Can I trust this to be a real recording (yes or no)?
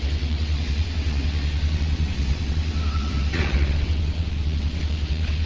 no